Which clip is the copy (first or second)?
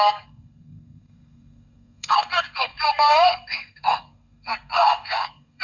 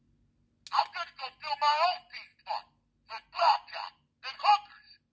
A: first